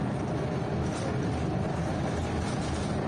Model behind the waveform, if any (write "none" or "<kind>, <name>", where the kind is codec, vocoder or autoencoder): none